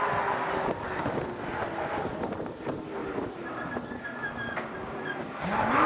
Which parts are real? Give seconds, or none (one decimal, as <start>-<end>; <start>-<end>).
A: 0.0-3.0; 3.7-5.9